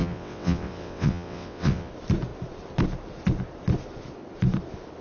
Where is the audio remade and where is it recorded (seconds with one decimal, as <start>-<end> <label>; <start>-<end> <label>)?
0.0-1.9 remade; 1.9-5.0 recorded